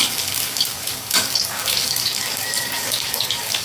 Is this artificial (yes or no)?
yes